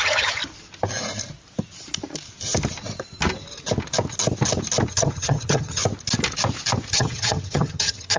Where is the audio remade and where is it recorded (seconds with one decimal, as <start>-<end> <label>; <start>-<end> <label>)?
0.0-0.4 remade; 0.4-4.9 recorded; 4.9-5.8 remade; 5.8-6.9 recorded; 6.9-8.2 remade